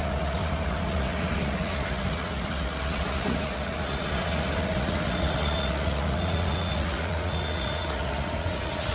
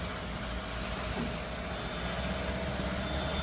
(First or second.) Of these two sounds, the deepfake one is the first